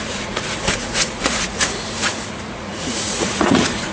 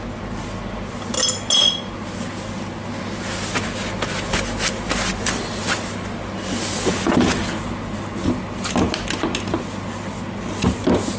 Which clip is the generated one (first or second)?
first